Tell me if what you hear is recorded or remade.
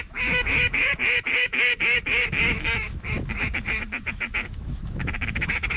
remade